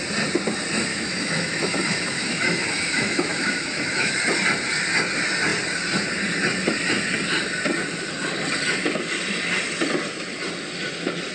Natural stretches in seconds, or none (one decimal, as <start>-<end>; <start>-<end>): 0.0-0.9; 4.1-11.3